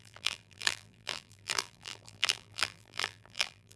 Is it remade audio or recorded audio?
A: remade